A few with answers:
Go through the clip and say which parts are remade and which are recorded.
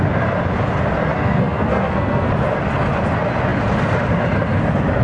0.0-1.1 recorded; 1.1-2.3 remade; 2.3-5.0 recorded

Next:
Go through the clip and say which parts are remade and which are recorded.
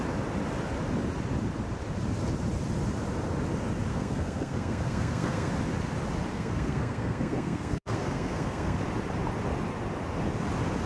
0.0-3.9 recorded; 3.9-5.5 remade; 5.5-6.3 recorded; 6.3-8.8 remade; 8.8-10.9 recorded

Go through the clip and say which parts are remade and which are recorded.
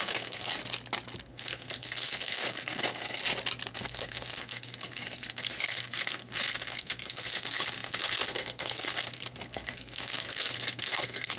0.0-0.6 remade; 0.6-1.3 recorded; 1.3-3.2 remade; 3.2-3.7 recorded; 3.7-11.4 remade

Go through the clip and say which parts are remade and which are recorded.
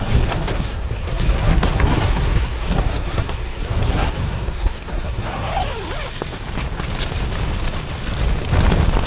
0.0-5.5 remade; 5.5-9.1 recorded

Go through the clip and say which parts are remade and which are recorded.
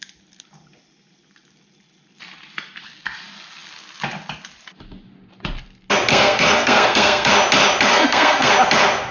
0.0-6.1 recorded; 6.1-7.3 remade; 7.3-7.9 recorded; 7.9-8.5 remade; 8.5-9.1 recorded